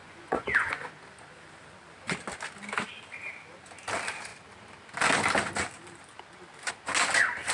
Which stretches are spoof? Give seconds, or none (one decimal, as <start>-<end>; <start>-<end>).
0.0-0.9